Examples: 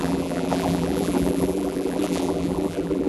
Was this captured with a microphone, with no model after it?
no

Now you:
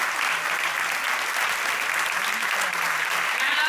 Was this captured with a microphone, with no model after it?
no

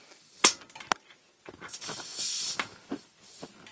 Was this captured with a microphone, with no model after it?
yes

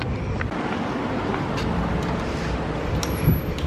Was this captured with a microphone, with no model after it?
yes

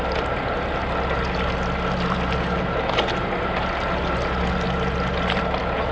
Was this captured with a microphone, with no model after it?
yes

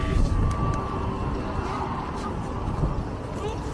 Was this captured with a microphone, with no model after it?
yes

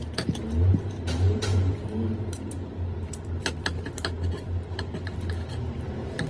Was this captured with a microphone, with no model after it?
yes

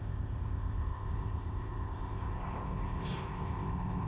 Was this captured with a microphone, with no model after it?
no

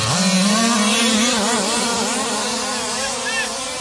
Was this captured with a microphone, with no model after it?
yes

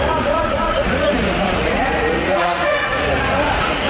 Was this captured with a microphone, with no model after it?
no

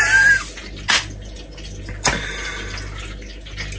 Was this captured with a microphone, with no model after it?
yes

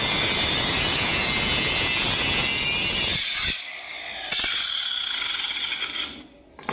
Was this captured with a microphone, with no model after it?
yes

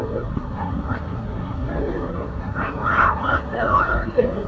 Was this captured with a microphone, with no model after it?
no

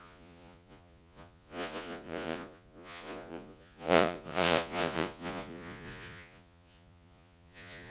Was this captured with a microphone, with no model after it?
no